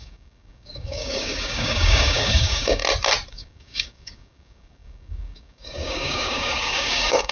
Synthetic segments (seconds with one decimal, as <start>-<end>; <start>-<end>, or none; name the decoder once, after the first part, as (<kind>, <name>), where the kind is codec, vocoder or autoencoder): 0.0-2.8 (codec, DAC); 3.3-7.3